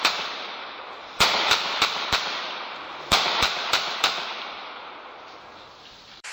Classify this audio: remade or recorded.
remade